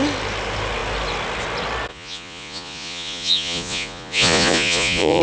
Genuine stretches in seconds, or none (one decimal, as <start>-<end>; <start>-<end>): 0.0-1.9